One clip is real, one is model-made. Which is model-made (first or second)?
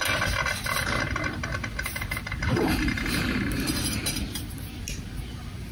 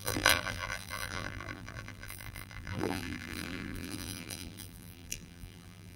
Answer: second